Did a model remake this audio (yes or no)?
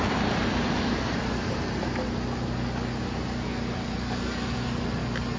no